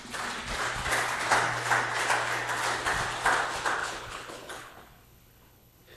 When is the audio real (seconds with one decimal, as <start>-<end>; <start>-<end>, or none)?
0.0-3.8